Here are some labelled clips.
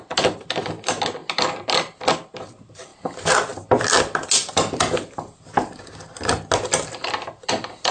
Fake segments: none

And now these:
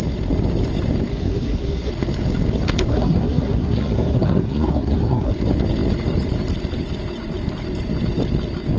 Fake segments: 1.1-1.9 (codec, SNAC); 2.9-5.3

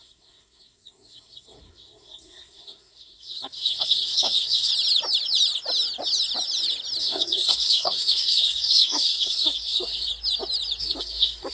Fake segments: 0.0-4.7 (codec, SNAC); 7.0-10.1; 10.8-11.5

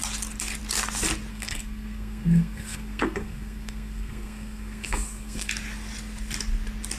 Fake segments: 1.3-5.5 (codec, SNAC)

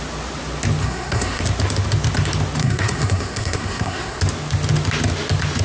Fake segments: 0.8-1.4 (codec, SNAC); 2.6-4.2

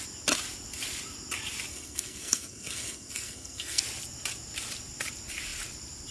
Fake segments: 1.7-3.8 (codec, SNAC)

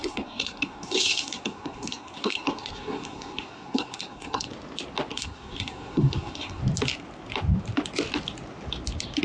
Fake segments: 0.0-4.5 (codec, SNAC); 5.1-6.6

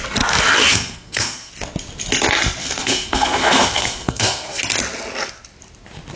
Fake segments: 0.7-1.5 (codec, SNAC); 2.6-4.6